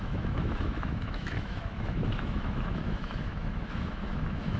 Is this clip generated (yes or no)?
yes